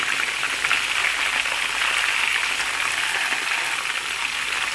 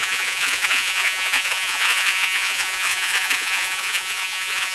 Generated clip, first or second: second